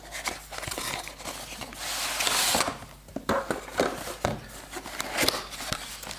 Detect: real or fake real